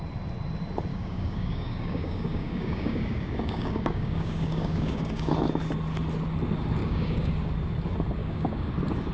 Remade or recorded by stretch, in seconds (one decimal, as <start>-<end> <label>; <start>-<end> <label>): 0.0-0.9 recorded; 0.9-5.3 remade; 5.3-6.8 recorded; 6.8-7.3 remade; 7.3-8.2 recorded; 8.2-8.7 remade; 8.7-9.1 recorded